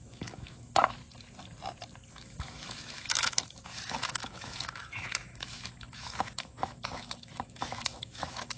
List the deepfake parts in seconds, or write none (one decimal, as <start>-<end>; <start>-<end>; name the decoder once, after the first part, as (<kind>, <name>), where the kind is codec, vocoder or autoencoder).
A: 0.0-1.0 (autoencoder, DAC-VAE); 2.1-8.6